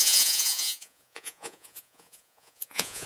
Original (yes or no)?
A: no